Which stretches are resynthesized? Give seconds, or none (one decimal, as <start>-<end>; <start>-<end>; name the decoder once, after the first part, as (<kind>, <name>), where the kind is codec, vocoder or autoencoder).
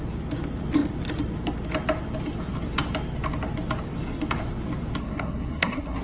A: 5.0-6.0 (codec, SNAC)